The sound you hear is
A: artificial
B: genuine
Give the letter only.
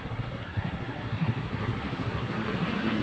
A